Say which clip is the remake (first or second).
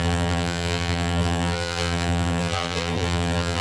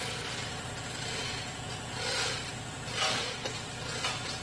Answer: first